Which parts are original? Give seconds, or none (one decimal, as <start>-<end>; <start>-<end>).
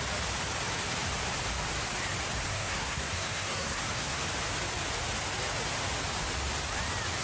0.0-2.5; 4.2-7.2